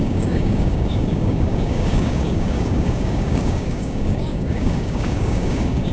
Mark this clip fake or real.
fake